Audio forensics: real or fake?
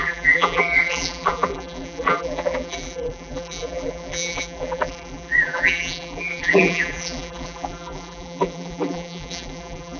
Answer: fake